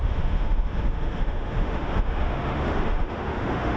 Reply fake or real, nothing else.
fake